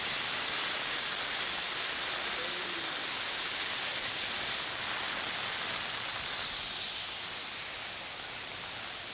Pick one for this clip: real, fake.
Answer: real